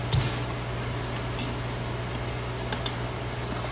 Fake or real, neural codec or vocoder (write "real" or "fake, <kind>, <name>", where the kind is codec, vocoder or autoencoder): real